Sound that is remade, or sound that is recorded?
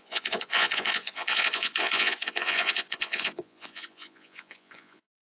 remade